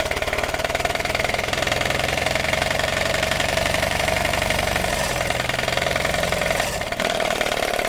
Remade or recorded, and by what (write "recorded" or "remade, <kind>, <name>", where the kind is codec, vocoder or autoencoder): remade, vocoder, BigVGAN v2